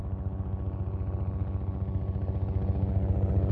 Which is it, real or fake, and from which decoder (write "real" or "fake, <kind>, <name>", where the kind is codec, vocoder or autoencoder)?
real